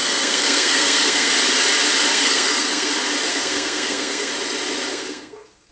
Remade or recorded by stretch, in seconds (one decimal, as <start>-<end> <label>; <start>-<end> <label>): 0.0-1.3 remade; 1.3-2.1 recorded; 2.1-2.9 remade; 2.9-3.3 recorded; 3.3-4.3 remade; 4.3-4.9 recorded; 4.9-5.7 remade